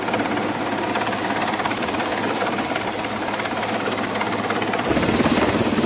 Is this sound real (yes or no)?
yes